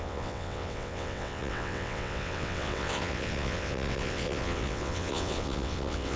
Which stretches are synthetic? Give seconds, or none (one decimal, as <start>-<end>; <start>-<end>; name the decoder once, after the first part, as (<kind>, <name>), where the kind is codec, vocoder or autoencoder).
0.0-6.2 (vocoder, WaveNeXt)